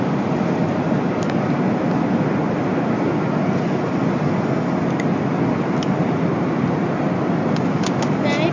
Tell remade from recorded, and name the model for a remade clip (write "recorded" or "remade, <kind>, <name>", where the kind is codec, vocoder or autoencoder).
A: recorded